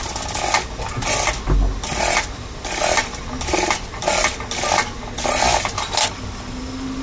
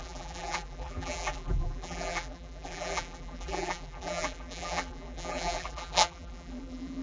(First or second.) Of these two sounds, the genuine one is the first